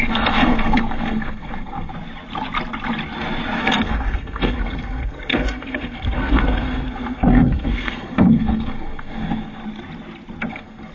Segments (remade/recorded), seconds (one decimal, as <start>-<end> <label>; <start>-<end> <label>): 0.0-1.9 remade; 1.9-3.6 recorded; 3.6-9.6 remade; 9.6-10.5 recorded; 10.5-10.9 remade